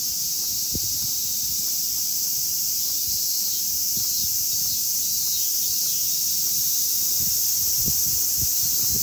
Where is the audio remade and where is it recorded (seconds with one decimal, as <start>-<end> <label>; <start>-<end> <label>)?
0.0-1.1 recorded; 1.1-3.7 remade; 3.7-9.0 recorded